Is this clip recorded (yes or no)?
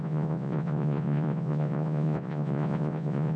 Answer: no